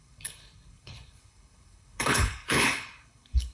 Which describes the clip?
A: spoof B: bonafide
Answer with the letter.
A